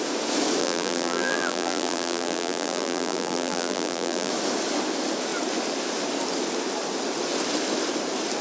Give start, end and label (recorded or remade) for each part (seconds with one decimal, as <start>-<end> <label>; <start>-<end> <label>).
0.0-0.6 recorded; 0.6-4.3 remade; 4.3-8.4 recorded